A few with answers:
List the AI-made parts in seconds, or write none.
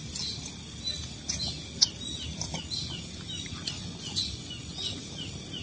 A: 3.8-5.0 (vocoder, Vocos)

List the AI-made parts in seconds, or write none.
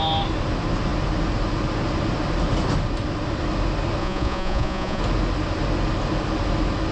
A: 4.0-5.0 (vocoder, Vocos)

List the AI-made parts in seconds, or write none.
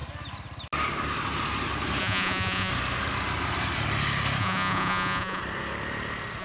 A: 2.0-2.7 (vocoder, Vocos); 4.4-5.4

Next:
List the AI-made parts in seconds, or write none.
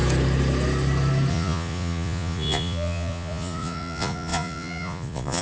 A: 1.3-5.4 (vocoder, Vocos)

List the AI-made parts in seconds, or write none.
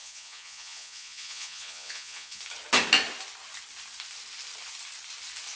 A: 0.0-2.4 (vocoder, Vocos)